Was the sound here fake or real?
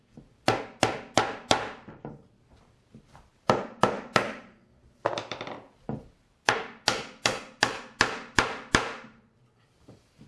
fake